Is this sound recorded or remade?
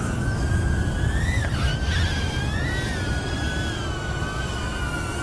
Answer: recorded